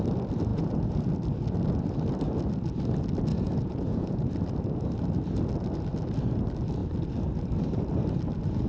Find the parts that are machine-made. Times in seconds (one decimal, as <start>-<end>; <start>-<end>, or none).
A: 0.5-1.0; 3.3-4.3